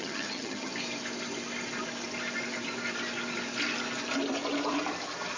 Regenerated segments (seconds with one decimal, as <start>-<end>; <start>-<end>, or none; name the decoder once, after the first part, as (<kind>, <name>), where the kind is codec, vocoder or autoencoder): 0.0-0.7 (vocoder, HiFi-GAN)